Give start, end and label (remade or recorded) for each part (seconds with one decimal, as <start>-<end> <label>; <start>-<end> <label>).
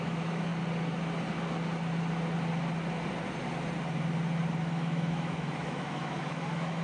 0.0-0.5 remade; 0.5-4.6 recorded; 4.6-6.8 remade